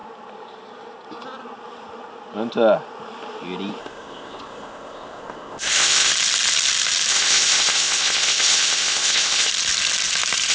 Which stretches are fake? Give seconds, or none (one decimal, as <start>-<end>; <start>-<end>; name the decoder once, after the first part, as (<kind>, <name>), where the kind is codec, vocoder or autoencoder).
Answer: 3.8-6.1 (codec, ZipCodec); 7.1-9.5